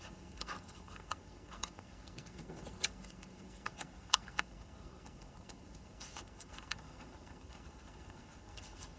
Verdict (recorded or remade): remade